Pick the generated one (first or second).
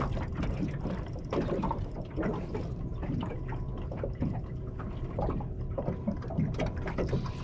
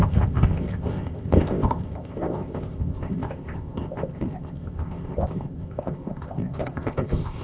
second